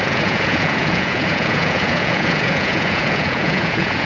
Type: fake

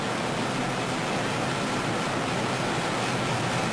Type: real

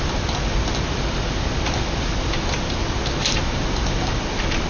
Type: real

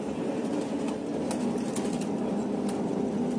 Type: real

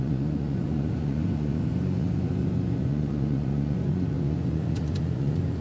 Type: fake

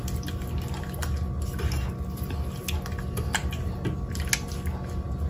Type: real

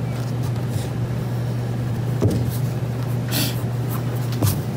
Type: real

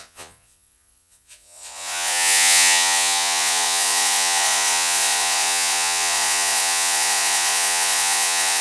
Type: fake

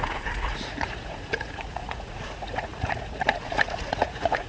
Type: fake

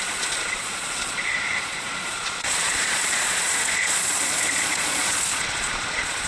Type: fake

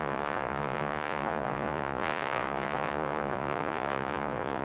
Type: fake